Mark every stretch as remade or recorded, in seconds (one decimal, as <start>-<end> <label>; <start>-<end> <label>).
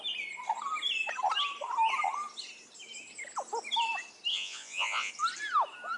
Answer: 0.0-4.3 recorded; 4.3-5.1 remade; 5.1-6.0 recorded